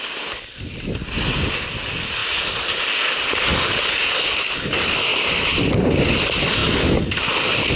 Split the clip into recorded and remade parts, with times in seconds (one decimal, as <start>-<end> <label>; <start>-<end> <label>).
0.0-7.8 recorded